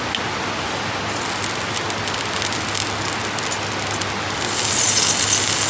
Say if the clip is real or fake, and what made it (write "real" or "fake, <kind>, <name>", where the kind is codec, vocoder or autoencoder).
real